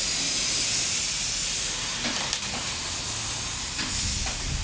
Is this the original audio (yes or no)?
yes